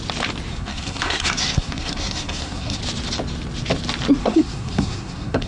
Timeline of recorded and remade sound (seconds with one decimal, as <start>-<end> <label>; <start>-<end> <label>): 0.0-0.5 recorded; 0.5-2.8 remade; 2.8-4.2 recorded; 4.2-5.5 remade